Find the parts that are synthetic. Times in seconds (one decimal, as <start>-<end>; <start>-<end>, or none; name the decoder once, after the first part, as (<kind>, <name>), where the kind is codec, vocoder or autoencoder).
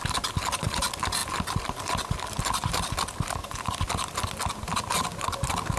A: 1.2-2.9 (vocoder, BigVGAN v2); 3.4-4.3